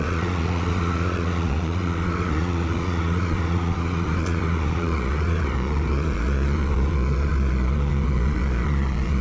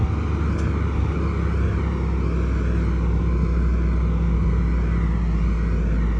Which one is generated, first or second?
first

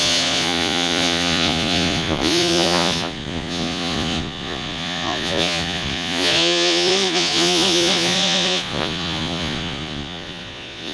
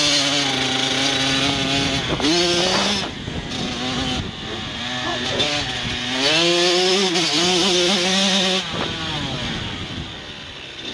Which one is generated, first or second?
first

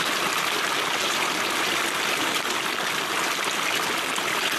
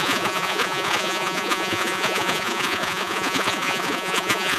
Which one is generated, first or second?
second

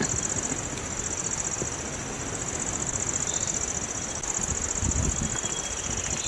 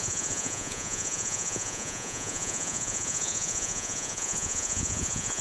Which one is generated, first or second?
second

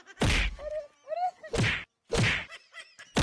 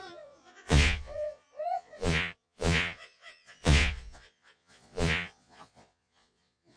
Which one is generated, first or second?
second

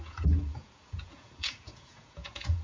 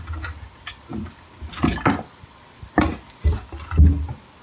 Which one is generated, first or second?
first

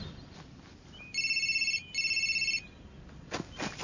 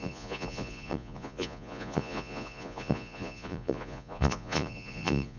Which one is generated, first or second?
second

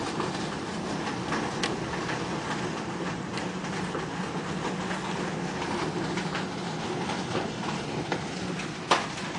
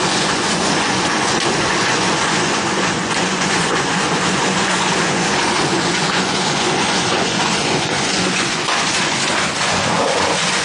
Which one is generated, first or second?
second